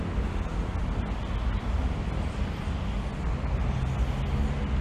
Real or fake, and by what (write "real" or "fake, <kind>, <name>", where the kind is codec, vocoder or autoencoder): real